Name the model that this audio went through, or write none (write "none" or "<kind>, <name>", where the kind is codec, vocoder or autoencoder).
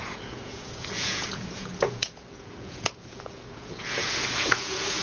vocoder, Vocos